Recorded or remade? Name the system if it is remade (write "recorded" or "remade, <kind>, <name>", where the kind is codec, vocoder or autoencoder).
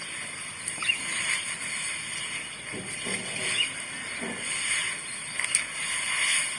recorded